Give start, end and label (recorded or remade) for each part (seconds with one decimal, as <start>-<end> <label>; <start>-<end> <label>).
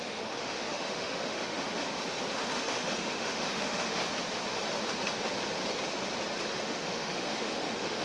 0.0-1.8 remade; 1.8-2.3 recorded; 2.3-4.0 remade; 4.0-6.5 recorded; 6.5-8.0 remade